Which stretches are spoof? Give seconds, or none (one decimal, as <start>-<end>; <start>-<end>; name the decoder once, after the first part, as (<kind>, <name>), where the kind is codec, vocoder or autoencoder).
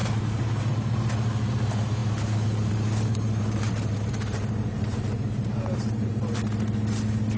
0.0-0.6 (vocoder, BigVGAN v2); 3.1-6.1